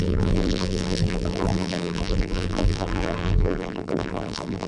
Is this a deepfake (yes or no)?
yes